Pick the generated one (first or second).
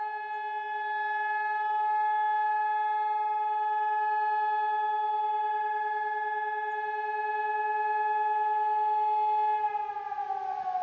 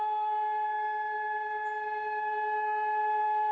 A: second